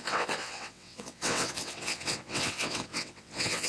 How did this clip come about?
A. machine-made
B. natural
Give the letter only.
A